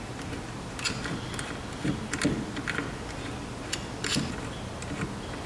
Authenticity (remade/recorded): recorded